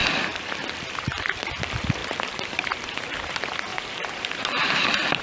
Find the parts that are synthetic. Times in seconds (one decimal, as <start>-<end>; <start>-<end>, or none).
2.0-3.3; 3.7-4.8